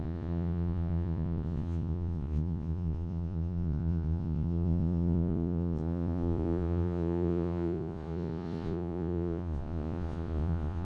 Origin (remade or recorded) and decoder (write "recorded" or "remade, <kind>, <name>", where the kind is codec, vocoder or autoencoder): remade, vocoder, Vocos